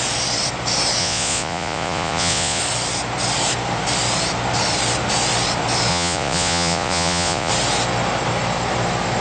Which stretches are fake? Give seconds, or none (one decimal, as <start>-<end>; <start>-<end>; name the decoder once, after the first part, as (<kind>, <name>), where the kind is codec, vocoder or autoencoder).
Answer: 1.0-2.6 (vocoder, Vocos); 5.9-7.5